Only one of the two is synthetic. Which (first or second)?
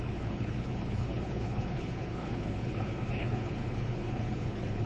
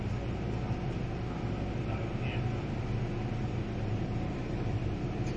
first